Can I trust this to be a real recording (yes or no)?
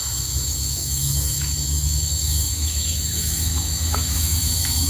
no